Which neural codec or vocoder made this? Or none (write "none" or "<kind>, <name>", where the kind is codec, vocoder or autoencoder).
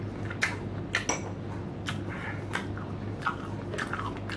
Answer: none